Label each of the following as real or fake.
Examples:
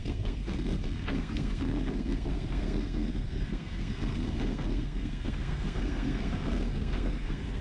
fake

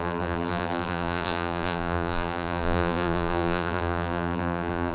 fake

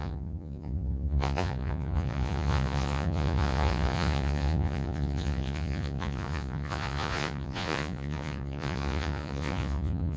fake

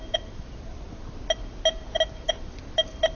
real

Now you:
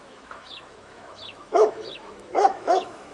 fake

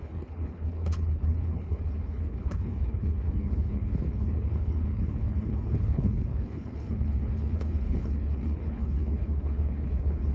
fake